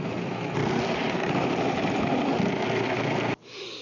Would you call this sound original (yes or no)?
yes